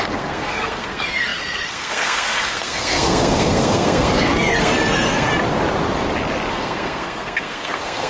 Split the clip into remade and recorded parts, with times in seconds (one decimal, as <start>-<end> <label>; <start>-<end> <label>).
0.0-5.3 remade; 5.3-6.5 recorded; 6.5-8.1 remade